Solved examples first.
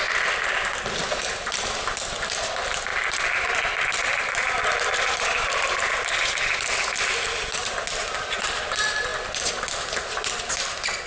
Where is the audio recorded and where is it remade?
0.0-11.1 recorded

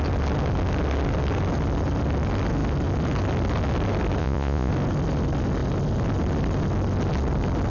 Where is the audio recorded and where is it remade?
0.0-4.2 recorded; 4.2-4.7 remade; 4.7-7.7 recorded

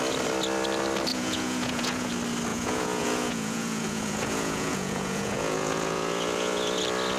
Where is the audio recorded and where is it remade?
0.0-1.1 recorded; 1.1-2.1 remade; 2.1-2.5 recorded; 2.5-6.8 remade; 6.8-7.2 recorded

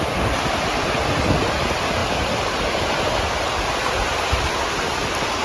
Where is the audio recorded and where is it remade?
0.0-5.4 recorded